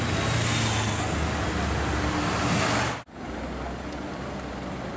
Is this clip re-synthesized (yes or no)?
no